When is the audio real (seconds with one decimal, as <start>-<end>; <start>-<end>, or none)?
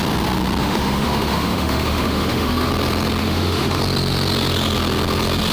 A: 0.0-0.6; 2.7-3.2; 3.8-5.5